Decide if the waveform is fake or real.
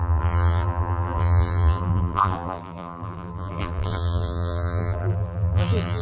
fake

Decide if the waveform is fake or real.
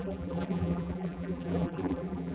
fake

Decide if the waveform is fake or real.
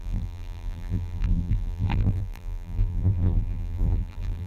fake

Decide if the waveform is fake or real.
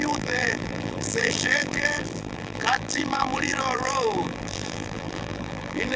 fake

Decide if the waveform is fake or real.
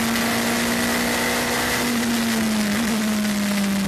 real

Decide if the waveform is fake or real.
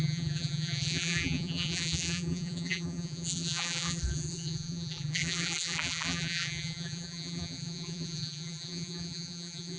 fake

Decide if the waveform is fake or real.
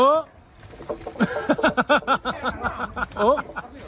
real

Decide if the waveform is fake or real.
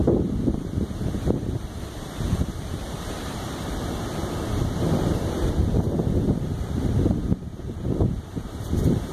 fake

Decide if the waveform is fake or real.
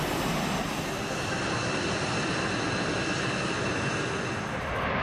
real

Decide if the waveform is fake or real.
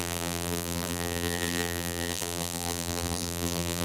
fake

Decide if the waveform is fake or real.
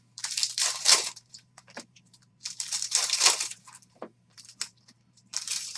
fake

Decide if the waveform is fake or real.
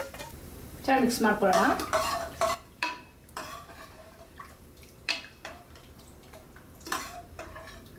fake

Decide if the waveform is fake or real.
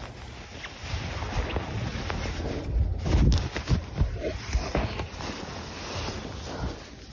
real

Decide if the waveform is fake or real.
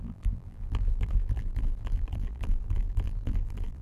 fake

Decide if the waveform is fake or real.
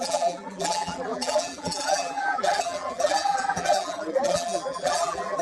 fake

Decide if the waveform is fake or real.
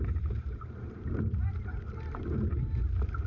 fake